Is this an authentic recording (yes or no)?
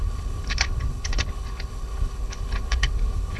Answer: no